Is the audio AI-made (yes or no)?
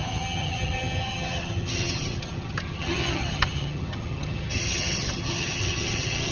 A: yes